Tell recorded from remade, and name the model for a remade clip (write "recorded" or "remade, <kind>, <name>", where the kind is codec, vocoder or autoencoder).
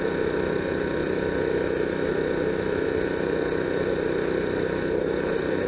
recorded